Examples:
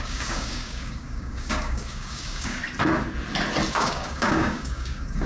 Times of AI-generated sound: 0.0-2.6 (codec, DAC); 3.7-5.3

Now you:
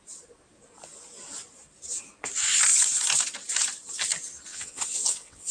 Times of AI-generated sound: 4.5-5.5 (vocoder, WaveNeXt)

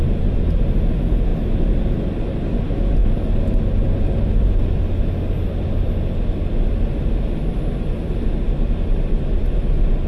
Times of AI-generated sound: none